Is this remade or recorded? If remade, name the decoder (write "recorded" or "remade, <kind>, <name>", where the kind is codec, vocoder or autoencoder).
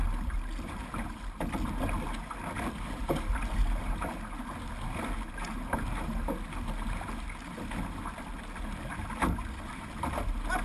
recorded